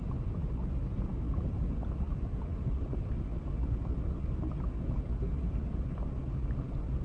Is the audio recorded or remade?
recorded